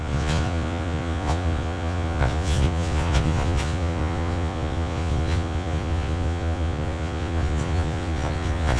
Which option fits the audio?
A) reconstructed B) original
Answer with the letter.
A